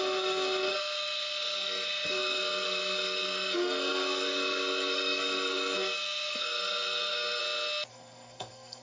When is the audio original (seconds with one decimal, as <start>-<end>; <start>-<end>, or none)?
7.4-7.9